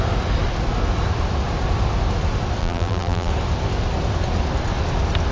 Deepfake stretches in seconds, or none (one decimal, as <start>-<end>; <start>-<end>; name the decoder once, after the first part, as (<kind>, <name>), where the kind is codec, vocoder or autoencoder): 2.6-3.3 (vocoder, BigVGAN v2)